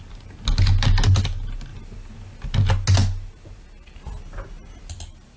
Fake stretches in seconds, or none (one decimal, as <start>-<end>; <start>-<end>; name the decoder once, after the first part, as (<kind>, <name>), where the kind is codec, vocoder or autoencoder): none